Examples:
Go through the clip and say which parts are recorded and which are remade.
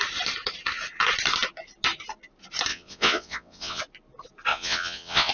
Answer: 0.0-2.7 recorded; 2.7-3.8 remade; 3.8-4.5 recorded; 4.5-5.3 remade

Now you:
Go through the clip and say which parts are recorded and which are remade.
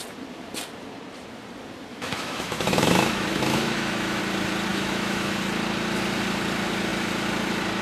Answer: 0.0-1.9 recorded; 1.9-4.2 remade; 4.2-4.7 recorded; 4.7-5.4 remade; 5.4-7.8 recorded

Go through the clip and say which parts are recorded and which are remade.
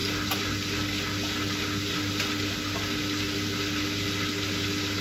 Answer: 0.0-5.0 recorded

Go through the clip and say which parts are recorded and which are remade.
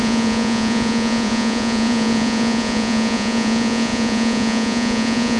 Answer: 0.0-5.4 remade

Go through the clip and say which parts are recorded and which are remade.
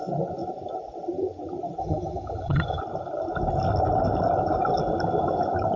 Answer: 0.0-1.8 recorded; 1.8-2.8 remade; 2.8-5.8 recorded